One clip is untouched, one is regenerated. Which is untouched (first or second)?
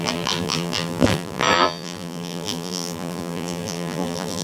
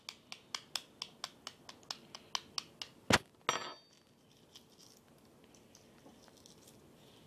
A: second